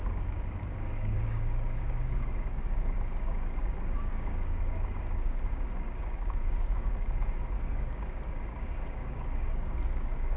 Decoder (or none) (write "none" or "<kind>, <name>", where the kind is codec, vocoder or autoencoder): codec, DAC